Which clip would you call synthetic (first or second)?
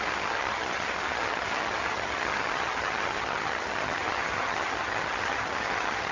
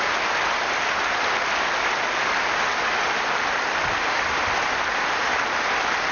first